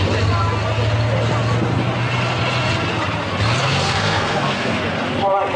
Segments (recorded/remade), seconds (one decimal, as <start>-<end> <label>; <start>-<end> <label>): 0.0-3.6 recorded; 3.6-4.8 remade; 4.8-5.6 recorded